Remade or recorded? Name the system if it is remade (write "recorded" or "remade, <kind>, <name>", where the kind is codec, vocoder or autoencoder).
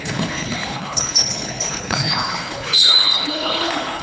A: remade, codec, HILCodec